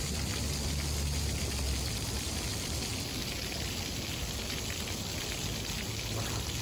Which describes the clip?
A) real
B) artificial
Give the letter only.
A